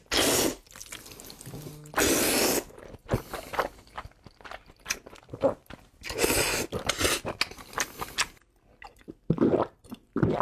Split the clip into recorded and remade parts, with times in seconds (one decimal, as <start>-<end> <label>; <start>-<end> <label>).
0.0-10.4 recorded